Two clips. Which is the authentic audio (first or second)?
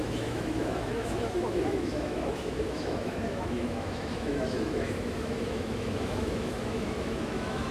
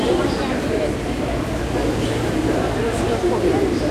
second